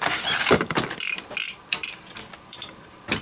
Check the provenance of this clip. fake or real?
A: real